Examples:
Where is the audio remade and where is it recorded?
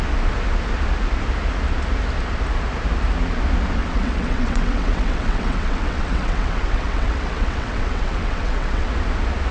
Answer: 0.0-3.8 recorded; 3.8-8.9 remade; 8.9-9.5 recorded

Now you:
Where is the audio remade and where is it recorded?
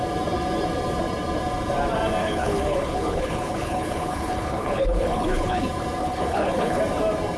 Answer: 0.0-2.2 recorded; 2.2-5.6 remade; 5.6-6.0 recorded; 6.0-6.8 remade; 6.8-7.4 recorded